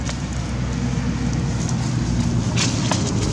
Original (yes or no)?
yes